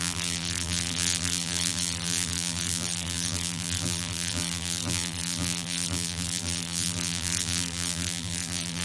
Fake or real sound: fake